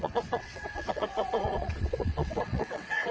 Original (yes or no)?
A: no